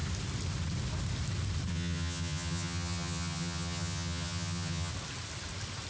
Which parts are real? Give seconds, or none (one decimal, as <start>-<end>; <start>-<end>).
0.0-1.7; 4.9-5.9